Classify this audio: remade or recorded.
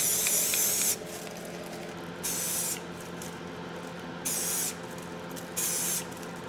recorded